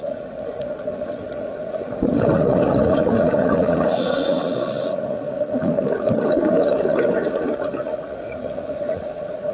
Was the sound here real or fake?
fake